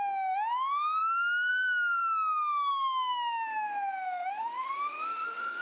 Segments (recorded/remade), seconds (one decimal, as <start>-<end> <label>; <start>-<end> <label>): 0.0-1.0 recorded; 1.0-1.5 remade; 1.5-2.0 recorded; 2.0-5.6 remade

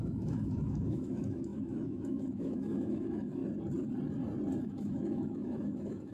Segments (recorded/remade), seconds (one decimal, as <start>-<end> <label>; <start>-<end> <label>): 0.0-3.4 remade; 3.4-4.6 recorded; 4.6-6.1 remade

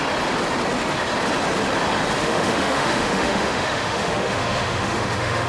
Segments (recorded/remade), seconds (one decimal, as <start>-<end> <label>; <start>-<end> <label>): 0.0-2.2 recorded; 2.2-5.5 remade

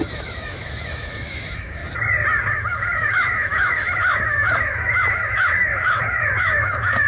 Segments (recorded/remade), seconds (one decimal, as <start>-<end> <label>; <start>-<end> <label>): 0.0-1.8 remade; 1.8-2.5 recorded; 2.5-7.1 remade

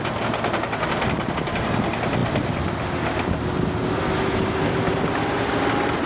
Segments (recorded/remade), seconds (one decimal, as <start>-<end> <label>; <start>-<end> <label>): 0.0-6.1 recorded

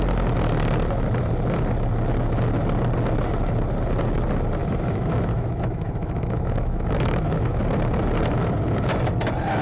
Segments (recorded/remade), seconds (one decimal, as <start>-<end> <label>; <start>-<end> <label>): 0.0-4.6 recorded; 4.6-7.6 remade; 7.6-9.6 recorded